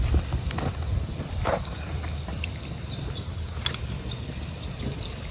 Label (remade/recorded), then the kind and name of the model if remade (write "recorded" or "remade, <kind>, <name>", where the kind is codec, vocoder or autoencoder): recorded